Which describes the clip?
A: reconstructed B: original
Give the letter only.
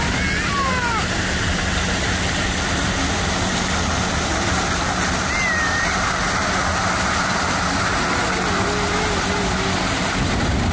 B